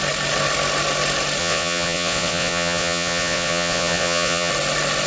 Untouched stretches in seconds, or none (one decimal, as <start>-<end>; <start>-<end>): 0.0-1.4; 4.5-5.1